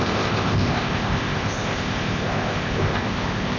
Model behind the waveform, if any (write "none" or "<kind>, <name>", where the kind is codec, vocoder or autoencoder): codec, ZipCodec